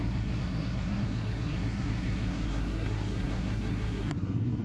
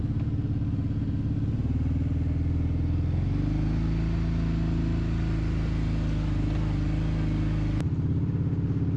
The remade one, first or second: first